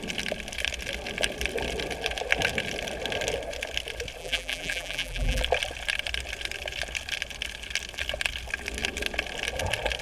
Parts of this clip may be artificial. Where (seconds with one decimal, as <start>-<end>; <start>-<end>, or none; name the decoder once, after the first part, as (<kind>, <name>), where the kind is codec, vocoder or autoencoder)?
4.2-5.4 (vocoder, BigVGAN v2)